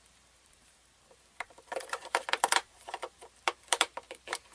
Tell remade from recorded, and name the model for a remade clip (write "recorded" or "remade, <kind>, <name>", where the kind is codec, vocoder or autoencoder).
remade, vocoder, BigVGAN v2